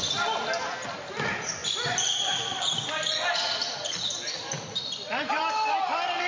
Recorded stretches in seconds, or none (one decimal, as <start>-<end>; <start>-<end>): 0.0-1.6; 5.4-6.3